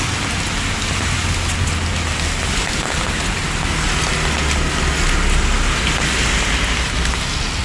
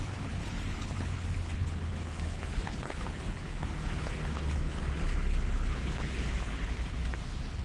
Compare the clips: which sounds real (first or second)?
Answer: first